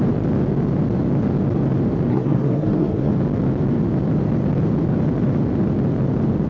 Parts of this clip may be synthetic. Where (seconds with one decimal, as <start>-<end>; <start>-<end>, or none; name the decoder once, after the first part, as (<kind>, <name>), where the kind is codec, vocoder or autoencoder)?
2.1-3.1 (codec, SNAC)